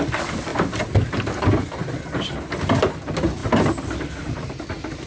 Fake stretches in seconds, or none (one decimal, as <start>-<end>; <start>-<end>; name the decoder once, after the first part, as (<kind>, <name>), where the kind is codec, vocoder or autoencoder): none